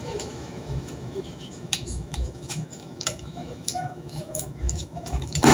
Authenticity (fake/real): fake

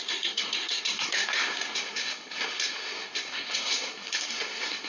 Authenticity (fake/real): fake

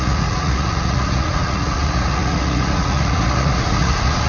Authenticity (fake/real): fake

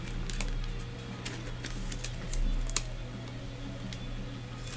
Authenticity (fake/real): real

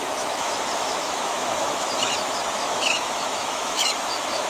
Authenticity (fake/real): fake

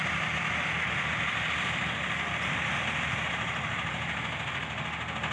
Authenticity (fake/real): real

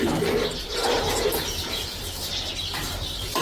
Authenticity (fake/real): fake